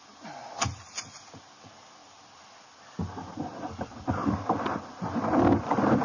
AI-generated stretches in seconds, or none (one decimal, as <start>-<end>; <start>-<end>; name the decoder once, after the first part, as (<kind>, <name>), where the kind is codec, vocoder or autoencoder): none